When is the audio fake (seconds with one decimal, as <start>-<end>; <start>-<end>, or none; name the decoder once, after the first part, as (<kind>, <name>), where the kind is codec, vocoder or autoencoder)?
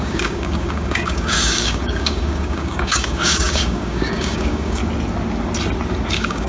0.0-4.8 (codec, DAC); 6.1-6.5